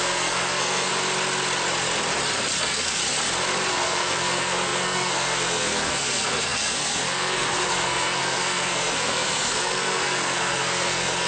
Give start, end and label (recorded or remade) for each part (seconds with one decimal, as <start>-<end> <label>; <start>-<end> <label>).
0.0-0.9 remade; 0.9-2.6 recorded; 2.6-3.0 remade; 3.0-3.7 recorded; 3.7-11.3 remade